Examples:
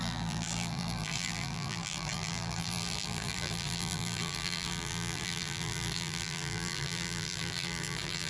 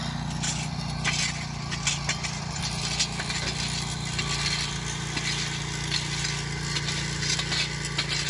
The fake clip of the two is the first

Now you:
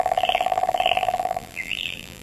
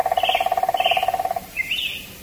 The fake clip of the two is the first